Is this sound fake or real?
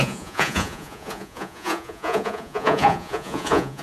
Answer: fake